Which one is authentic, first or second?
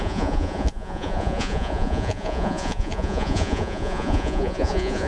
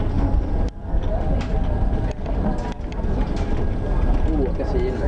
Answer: second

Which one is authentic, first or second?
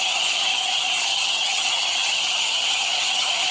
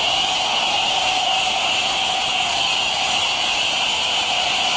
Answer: second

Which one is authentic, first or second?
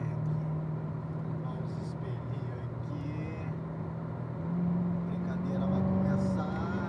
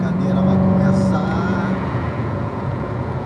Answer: first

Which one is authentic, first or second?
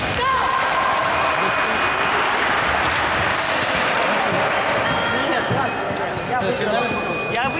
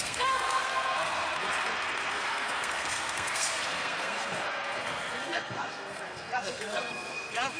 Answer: first